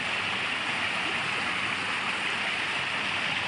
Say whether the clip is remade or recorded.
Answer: recorded